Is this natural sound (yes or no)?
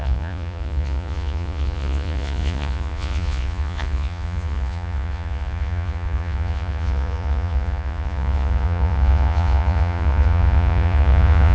no